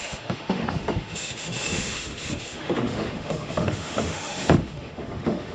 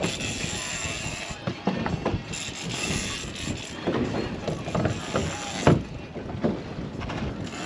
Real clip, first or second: second